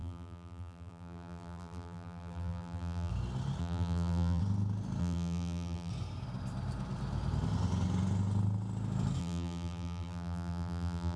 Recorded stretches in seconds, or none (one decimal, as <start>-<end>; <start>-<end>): 3.1-3.6; 4.4-5.0; 5.9-9.2